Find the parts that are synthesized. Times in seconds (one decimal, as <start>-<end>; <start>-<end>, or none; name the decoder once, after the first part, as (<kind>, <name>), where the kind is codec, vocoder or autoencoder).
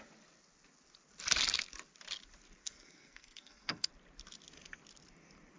2.6-3.9 (codec, SNAC)